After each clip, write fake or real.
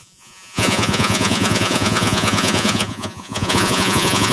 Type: fake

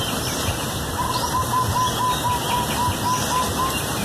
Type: real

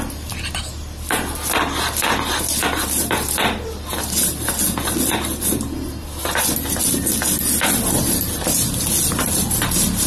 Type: real